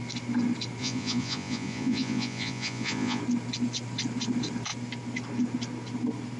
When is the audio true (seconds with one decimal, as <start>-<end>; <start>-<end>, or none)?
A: 0.0-0.8; 3.2-6.4